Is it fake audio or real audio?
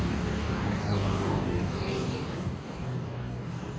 fake